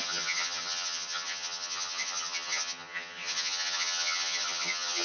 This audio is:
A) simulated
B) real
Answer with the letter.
A